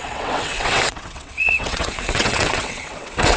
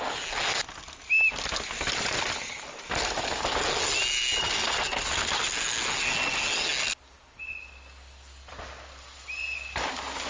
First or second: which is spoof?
first